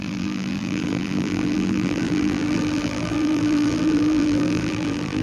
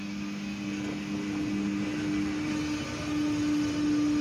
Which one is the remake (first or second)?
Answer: first